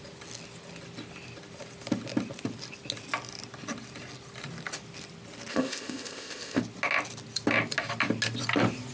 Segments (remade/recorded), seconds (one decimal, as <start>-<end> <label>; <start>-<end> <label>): 0.0-5.5 recorded; 5.5-6.6 remade; 6.6-8.9 recorded